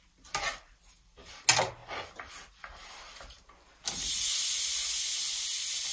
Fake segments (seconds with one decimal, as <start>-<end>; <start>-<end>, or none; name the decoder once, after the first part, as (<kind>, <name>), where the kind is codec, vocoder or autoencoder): none